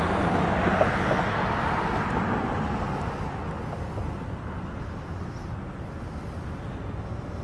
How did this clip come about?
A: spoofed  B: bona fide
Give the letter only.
B